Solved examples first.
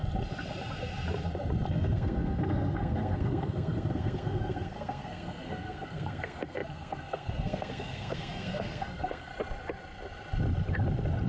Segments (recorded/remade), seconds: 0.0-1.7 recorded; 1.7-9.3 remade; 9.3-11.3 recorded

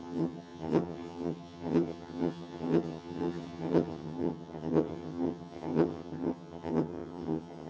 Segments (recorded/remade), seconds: 0.0-7.7 remade

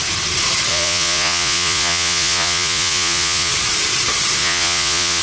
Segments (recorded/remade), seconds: 0.0-0.7 recorded; 0.7-3.5 remade; 3.5-4.4 recorded; 4.4-5.2 remade

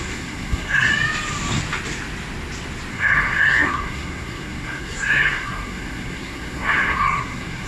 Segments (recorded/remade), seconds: 0.0-0.9 remade; 0.9-2.9 recorded; 2.9-7.7 remade

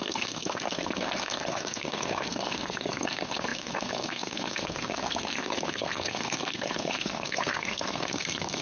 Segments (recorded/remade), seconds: 0.0-8.6 remade

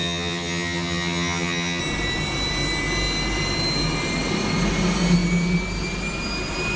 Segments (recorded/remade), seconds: 0.0-1.8 remade; 1.8-6.8 recorded

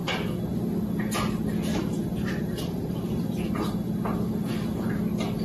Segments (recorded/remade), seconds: 0.0-1.7 recorded; 1.7-4.9 remade; 4.9-5.4 recorded